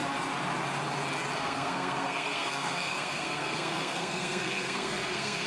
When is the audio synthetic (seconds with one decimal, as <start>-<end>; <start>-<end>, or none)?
1.4-5.5